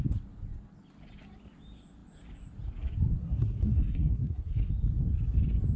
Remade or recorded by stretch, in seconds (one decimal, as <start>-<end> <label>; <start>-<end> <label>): 0.0-3.2 recorded; 3.2-4.7 remade; 4.7-5.8 recorded